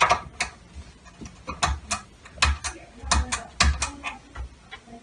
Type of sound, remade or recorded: recorded